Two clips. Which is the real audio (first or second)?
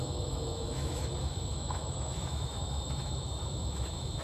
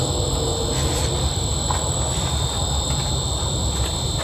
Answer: second